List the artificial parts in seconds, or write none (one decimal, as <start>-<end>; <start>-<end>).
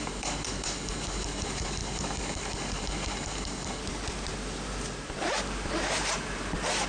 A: 0.0-3.8